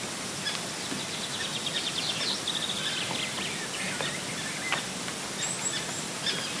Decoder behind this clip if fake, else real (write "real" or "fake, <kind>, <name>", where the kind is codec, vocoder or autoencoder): real